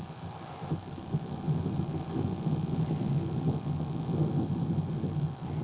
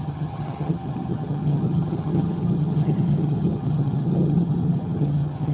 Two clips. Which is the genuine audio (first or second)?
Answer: first